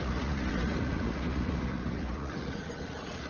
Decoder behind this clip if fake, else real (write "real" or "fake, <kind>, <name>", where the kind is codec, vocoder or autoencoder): fake, vocoder, Vocos